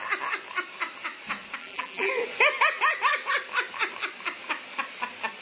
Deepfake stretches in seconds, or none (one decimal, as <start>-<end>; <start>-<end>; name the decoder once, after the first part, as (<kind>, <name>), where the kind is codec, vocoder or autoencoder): 1.6-2.1 (vocoder, BigVGAN v2)